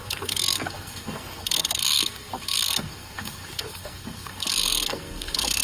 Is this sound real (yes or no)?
no